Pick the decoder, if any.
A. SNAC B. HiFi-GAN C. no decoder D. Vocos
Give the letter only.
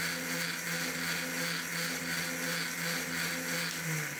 C